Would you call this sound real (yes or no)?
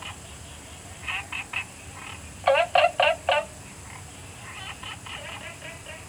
yes